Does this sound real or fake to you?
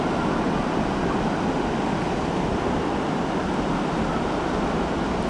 real